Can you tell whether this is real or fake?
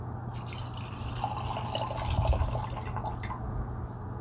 real